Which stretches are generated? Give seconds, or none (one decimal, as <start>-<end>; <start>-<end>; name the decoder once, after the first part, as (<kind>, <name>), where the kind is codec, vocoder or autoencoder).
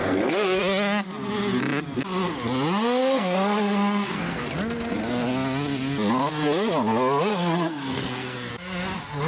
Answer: 0.0-0.6 (codec, SNAC); 3.0-4.4; 7.3-8.5